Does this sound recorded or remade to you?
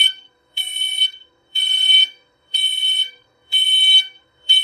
remade